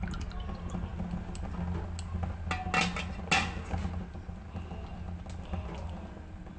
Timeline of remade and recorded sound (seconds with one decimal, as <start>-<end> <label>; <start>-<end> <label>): 0.0-6.6 recorded